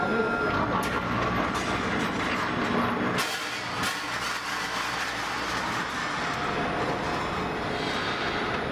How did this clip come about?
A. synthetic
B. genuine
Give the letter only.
B